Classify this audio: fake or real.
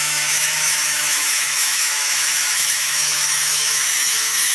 fake